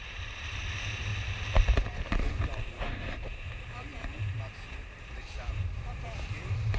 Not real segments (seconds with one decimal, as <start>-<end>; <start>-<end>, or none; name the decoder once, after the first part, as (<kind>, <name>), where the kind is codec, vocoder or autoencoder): 0.0-1.1 (vocoder, BigVGAN v2); 2.5-6.8